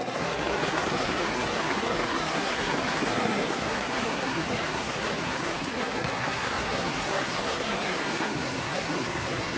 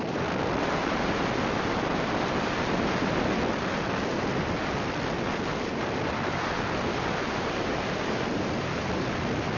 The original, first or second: second